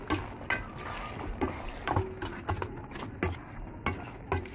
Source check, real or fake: real